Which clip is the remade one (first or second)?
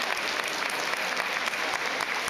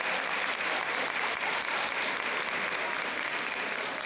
second